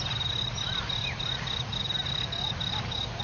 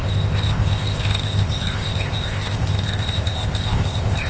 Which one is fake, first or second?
second